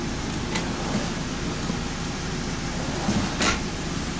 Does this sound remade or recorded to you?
recorded